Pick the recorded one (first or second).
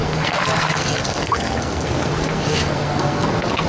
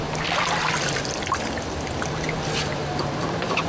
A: second